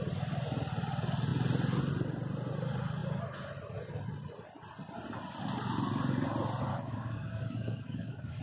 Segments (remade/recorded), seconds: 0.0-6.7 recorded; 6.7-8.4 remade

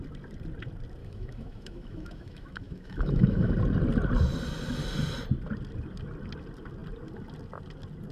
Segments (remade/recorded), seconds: 0.0-1.0 recorded; 1.0-3.5 remade; 3.5-8.1 recorded

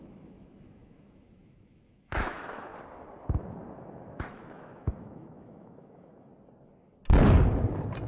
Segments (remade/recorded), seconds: 0.0-2.7 remade; 2.7-3.7 recorded; 3.7-6.3 remade; 6.3-8.1 recorded

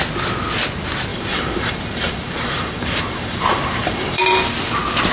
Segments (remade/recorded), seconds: 0.0-1.1 recorded; 1.1-4.2 remade; 4.2-5.1 recorded